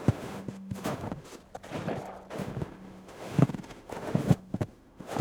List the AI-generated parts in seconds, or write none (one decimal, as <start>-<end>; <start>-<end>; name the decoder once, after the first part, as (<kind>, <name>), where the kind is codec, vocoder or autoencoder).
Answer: 0.0-1.4 (autoencoder, DAC-VAE); 2.3-5.2